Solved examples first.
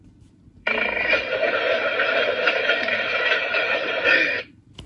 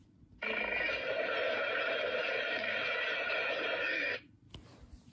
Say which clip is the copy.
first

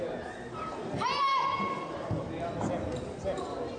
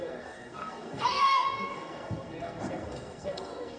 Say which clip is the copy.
second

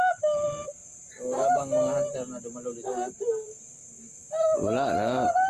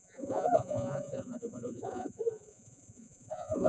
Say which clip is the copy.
second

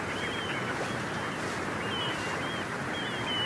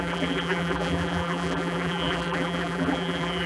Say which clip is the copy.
second